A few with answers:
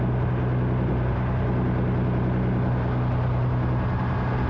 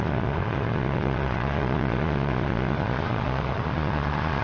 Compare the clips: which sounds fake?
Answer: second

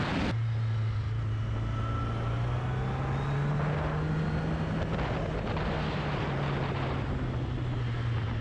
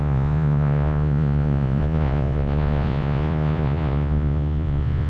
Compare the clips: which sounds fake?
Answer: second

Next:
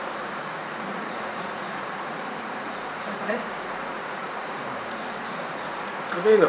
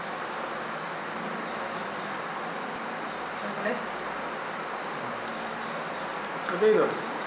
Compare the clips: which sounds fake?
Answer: first